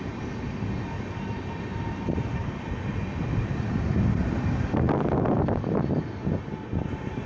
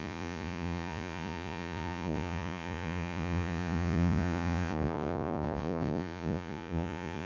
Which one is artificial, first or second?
second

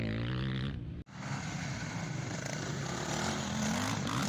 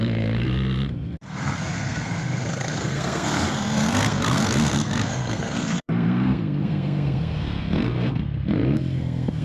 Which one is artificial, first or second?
second